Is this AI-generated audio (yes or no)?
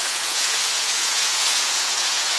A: yes